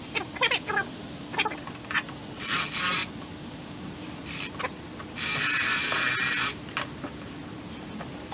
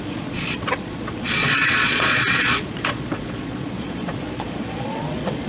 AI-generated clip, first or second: second